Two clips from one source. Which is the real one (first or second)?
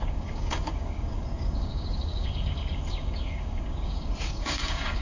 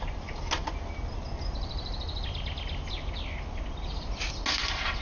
second